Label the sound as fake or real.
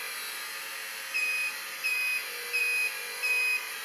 real